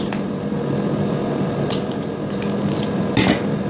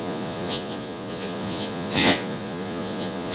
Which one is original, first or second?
first